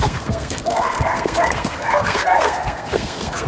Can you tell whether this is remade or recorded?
remade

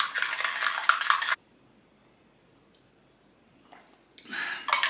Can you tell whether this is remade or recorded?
recorded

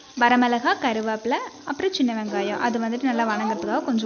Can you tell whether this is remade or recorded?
recorded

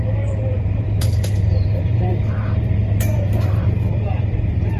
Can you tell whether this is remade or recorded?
remade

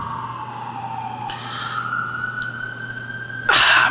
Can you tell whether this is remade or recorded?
recorded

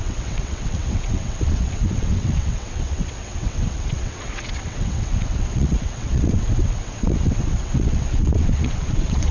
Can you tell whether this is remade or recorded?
remade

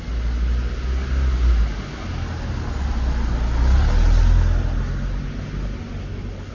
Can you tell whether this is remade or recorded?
recorded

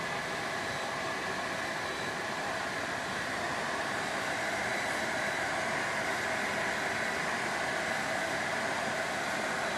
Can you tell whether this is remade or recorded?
recorded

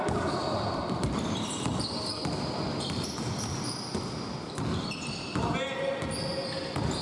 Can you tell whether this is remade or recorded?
recorded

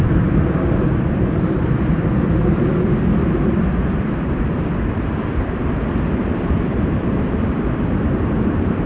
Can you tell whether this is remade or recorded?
remade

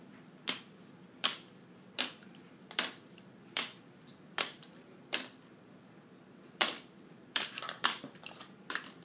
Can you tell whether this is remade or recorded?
remade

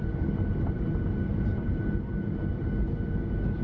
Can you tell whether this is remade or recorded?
recorded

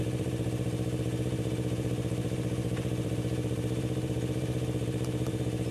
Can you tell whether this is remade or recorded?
remade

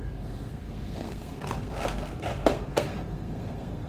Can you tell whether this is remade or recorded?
remade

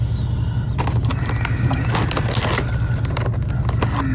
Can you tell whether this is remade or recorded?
recorded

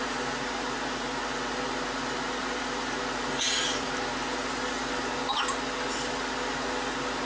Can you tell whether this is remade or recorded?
recorded